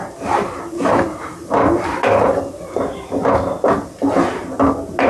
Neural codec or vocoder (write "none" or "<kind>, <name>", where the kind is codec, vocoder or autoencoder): none